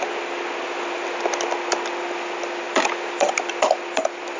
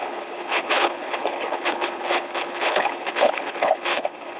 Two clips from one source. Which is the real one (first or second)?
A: first